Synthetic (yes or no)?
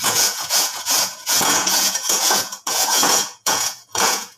yes